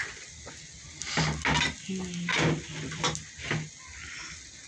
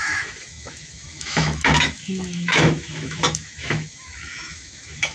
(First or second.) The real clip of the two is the first